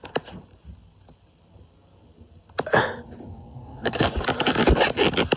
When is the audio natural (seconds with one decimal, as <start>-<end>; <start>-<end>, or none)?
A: 0.0-3.3; 4.1-5.4